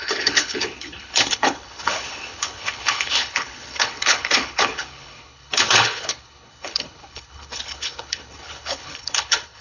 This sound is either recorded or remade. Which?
remade